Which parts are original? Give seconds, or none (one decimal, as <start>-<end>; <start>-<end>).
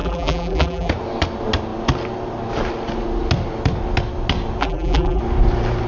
0.9-4.6; 5.2-5.9